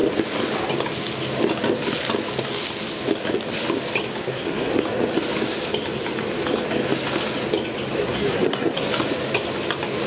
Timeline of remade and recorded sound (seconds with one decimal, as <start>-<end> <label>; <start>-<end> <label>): 0.0-4.2 recorded; 4.2-4.7 remade; 4.7-8.0 recorded; 8.0-8.9 remade; 8.9-10.1 recorded